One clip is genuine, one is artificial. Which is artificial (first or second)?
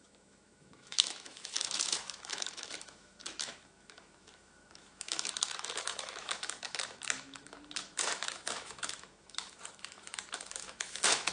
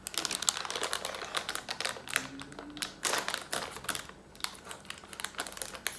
first